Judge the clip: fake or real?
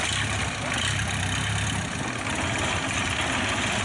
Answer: real